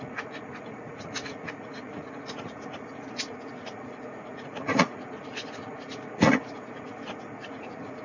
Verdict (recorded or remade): remade